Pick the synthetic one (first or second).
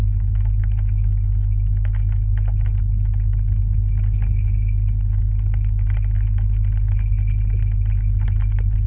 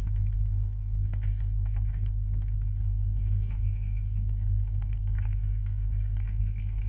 second